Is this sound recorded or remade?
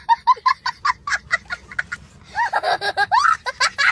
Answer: recorded